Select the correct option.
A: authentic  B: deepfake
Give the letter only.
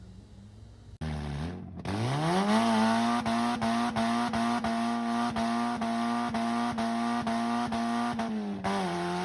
A